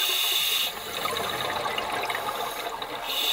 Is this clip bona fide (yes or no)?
yes